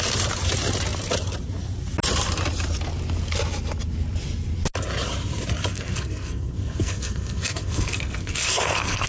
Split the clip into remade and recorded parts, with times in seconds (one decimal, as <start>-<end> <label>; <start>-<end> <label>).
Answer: 0.0-5.7 recorded; 5.7-9.1 remade